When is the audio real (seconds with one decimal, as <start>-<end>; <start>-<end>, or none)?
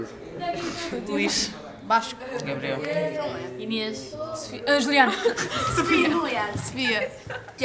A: 0.0-6.0; 6.6-7.6